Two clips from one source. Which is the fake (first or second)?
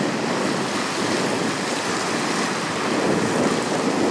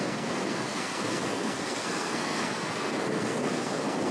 second